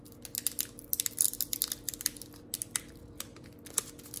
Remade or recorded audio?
recorded